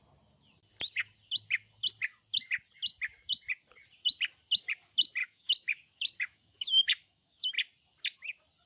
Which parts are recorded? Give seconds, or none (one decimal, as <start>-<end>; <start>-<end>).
0.0-5.2; 7.5-8.7